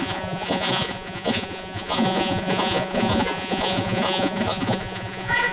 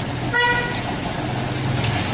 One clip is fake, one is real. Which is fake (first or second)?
first